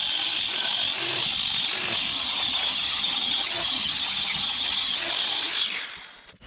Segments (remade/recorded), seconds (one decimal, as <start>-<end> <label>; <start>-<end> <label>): 0.0-2.1 recorded; 2.1-5.1 remade; 5.1-6.5 recorded